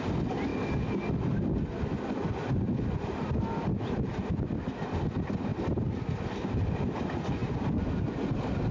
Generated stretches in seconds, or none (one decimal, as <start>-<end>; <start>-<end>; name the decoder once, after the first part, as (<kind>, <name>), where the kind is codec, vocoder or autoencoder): 0.0-0.5 (vocoder, BigVGAN v2); 2.1-7.4; 8.0-8.7